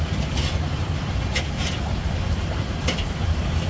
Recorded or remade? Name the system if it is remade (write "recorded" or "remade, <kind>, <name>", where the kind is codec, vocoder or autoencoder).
recorded